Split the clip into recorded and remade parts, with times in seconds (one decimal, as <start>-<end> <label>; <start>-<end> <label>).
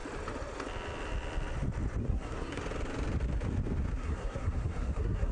0.0-2.0 recorded; 2.0-2.6 remade; 2.6-3.9 recorded; 3.9-5.3 remade